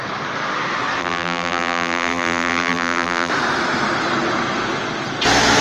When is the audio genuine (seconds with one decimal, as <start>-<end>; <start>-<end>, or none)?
0.0-1.0; 3.3-5.6